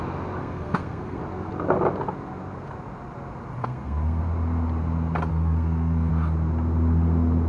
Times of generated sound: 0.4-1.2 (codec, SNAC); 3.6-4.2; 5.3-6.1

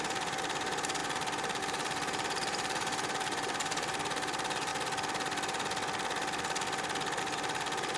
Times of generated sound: 0.0-4.7 (vocoder, BigVGAN v2); 7.2-8.0

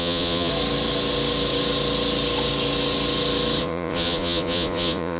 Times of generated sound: 0.0-0.5 (vocoder, Vocos); 3.6-5.2

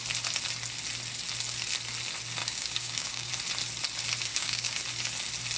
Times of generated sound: 2.4-3.3 (codec, DAC); 4.3-4.8

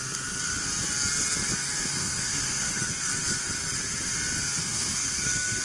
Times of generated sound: 1.8-2.7 (codec, SNAC); 4.6-5.6

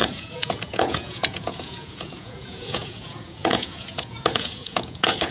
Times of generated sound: 0.0-5.3 (vocoder, Vocos)

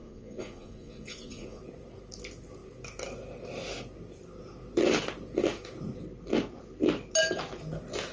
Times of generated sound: 0.0-1.6 (vocoder, Vocos)